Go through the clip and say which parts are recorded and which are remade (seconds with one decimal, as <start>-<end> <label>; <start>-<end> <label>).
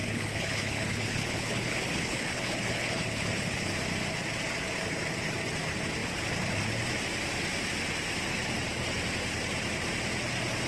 0.0-3.7 remade; 3.7-10.7 recorded